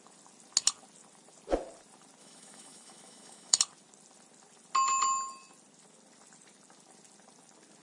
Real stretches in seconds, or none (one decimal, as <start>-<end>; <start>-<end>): 0.0-2.2; 3.6-7.8

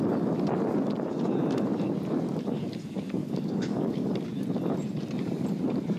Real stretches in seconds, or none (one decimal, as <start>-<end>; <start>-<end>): 0.0-3.2; 4.1-6.0

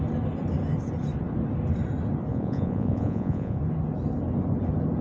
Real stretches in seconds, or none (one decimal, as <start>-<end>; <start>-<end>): 0.0-2.3; 3.6-5.0

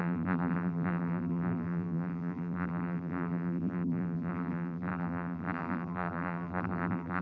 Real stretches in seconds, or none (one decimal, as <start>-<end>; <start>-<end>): none

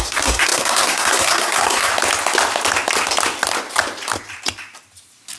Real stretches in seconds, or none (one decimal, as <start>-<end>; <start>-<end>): 1.9-5.4

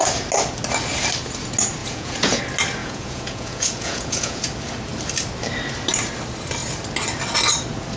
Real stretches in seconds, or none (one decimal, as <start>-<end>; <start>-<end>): 0.0-1.8; 2.4-2.8; 4.4-8.0

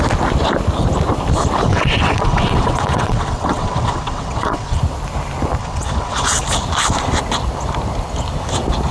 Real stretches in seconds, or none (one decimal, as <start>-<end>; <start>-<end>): 0.0-1.7; 4.8-5.6; 6.4-8.9

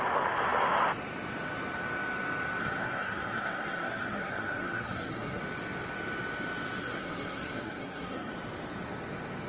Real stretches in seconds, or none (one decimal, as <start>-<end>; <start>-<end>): 0.0-2.6; 5.4-6.8; 8.3-9.5